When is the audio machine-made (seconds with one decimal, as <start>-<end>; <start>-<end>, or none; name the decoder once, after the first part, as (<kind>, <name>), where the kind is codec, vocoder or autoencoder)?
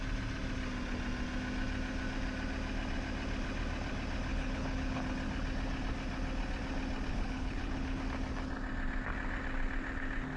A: 4.3-5.0 (codec, HILCodec); 7.1-8.0